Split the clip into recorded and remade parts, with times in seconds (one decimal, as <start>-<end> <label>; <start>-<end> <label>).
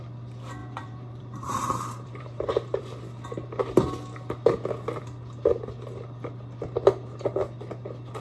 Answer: 0.0-0.6 recorded; 0.6-2.8 remade; 2.8-8.2 recorded